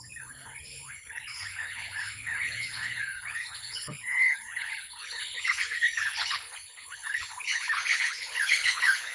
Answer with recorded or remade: remade